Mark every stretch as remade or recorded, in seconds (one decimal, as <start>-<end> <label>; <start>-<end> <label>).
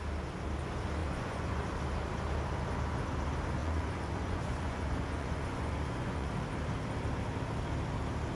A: 0.0-1.0 recorded; 1.0-1.6 remade; 1.6-3.6 recorded; 3.6-6.3 remade; 6.3-8.3 recorded